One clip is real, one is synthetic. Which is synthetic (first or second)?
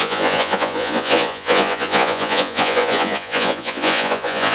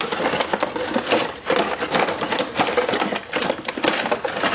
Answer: first